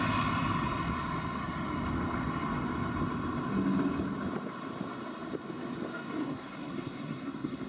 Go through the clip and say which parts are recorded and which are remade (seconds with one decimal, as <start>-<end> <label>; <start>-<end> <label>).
0.0-6.2 recorded; 6.2-7.7 remade